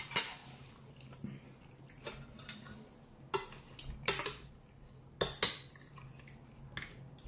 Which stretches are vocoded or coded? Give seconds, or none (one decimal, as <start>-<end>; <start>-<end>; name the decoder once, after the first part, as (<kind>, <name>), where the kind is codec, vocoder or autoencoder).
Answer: none